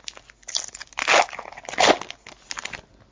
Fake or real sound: real